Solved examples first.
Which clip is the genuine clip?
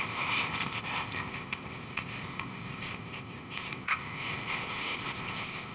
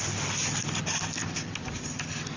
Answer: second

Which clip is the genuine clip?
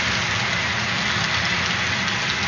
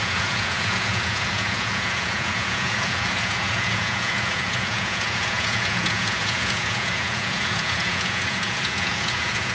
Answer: first